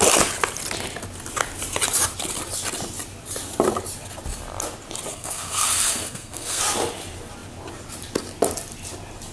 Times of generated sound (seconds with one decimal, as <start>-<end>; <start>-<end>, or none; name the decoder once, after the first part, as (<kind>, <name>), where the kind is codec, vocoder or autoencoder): 5.1-6.6 (codec, SNAC)